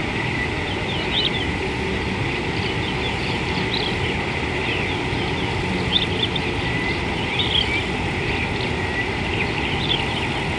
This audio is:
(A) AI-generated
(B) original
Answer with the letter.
B